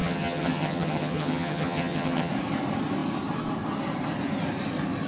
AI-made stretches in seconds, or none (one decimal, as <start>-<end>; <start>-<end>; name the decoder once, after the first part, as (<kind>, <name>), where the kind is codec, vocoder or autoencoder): 0.0-2.3 (vocoder, HiFi-GAN)